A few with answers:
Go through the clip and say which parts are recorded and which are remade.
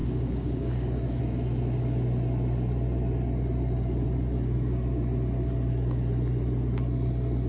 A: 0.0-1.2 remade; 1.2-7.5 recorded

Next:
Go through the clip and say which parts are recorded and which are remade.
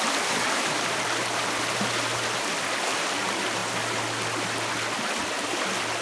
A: 0.0-6.0 recorded